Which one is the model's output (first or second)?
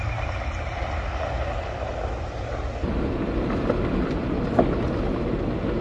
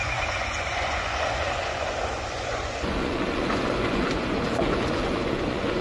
second